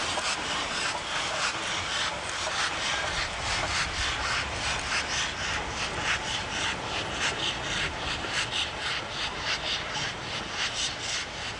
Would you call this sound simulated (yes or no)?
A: no